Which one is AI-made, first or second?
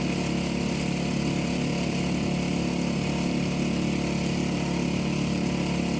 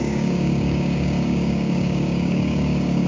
second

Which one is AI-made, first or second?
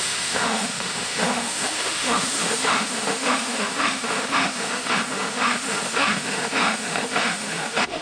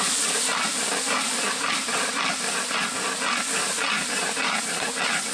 first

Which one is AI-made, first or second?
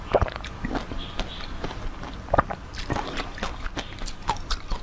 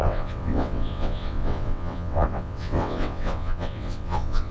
second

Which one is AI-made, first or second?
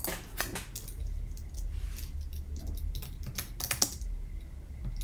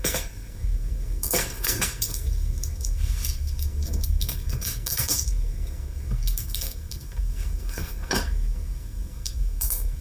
second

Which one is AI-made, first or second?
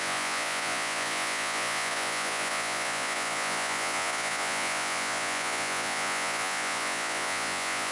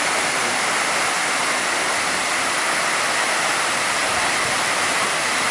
first